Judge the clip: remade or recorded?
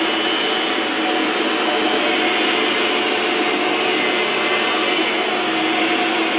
recorded